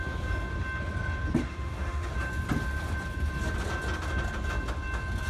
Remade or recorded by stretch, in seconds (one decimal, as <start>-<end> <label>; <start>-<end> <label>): 0.0-1.4 recorded; 1.4-2.1 remade; 2.1-5.3 recorded